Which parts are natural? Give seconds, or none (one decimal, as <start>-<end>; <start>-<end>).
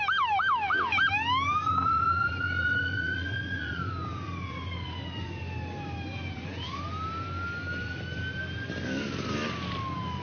0.0-1.6; 3.9-10.2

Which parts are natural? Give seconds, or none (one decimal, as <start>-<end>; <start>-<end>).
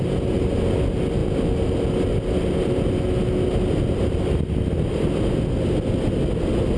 0.0-6.8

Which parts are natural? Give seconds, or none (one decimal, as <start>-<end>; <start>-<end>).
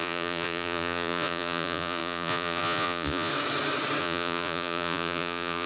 3.3-4.0